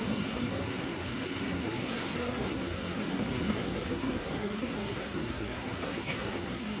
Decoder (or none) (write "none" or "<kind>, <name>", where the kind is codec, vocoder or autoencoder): codec, SNAC